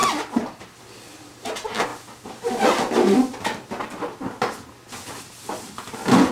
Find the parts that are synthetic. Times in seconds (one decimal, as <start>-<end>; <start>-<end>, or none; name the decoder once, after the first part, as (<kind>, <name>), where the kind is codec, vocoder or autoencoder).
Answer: none